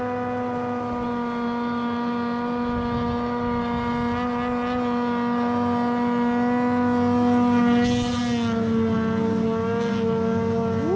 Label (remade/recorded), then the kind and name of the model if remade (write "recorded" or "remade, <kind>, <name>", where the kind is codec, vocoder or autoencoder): recorded